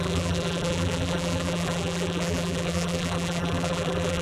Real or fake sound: fake